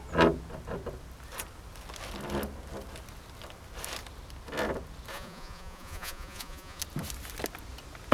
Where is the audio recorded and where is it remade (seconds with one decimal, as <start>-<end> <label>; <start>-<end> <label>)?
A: 0.0-5.1 recorded; 5.1-6.8 remade; 6.8-8.1 recorded